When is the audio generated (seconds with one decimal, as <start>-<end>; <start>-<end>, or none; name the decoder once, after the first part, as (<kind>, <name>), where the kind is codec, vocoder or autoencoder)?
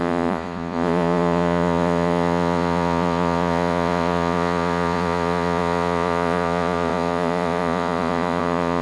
0.0-8.8 (vocoder, Vocos)